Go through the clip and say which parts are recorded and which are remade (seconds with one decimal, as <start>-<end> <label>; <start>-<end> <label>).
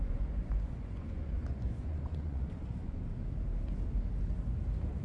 0.0-3.0 remade; 3.0-5.0 recorded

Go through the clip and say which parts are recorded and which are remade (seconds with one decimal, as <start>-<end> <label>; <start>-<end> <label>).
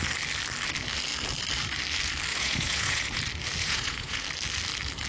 0.0-2.3 recorded; 2.3-3.2 remade; 3.2-3.6 recorded; 3.6-4.2 remade; 4.2-5.1 recorded